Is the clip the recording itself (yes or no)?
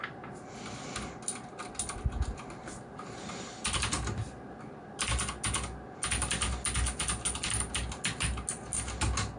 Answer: yes